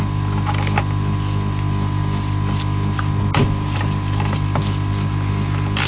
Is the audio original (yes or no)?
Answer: yes